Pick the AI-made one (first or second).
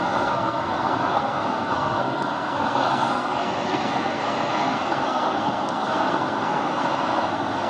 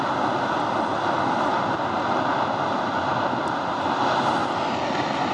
first